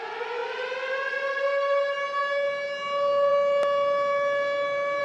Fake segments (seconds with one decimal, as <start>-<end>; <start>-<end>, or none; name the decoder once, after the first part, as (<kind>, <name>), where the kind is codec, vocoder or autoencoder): none

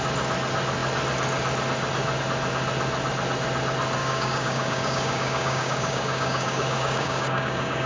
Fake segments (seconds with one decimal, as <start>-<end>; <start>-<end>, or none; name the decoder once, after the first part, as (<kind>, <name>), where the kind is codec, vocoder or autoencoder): 4.0-7.9 (codec, DAC)